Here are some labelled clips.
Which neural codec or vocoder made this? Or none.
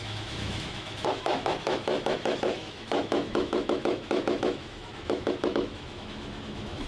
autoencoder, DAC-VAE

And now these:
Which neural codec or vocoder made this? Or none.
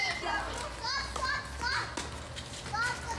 none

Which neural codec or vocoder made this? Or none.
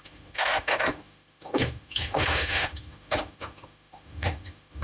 autoencoder, DAC-VAE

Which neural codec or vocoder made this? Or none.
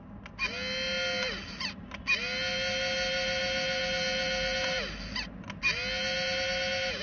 none